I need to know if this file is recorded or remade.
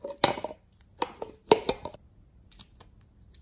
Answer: recorded